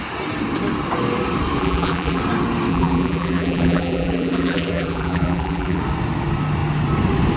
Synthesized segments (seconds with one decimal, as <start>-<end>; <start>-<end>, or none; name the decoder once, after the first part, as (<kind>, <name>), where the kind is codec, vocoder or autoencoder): 1.6-2.2 (vocoder, BigVGAN v2); 2.7-5.8